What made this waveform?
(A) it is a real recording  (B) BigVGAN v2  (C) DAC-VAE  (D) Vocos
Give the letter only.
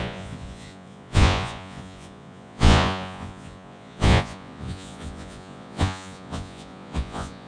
D